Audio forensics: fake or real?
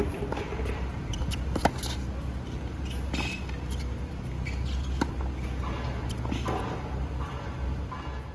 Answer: real